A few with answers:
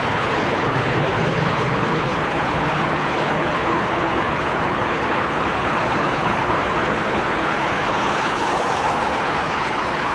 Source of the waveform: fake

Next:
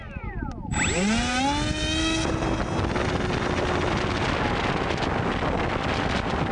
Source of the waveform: real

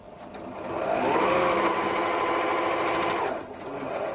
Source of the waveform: real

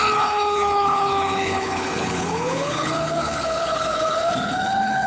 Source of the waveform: fake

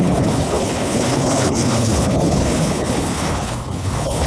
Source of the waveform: fake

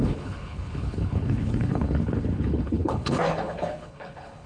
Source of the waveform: fake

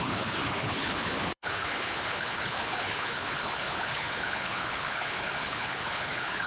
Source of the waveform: fake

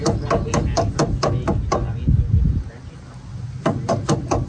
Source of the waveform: real